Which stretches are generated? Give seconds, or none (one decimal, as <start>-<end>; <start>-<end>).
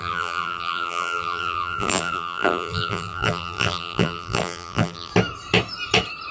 0.0-5.1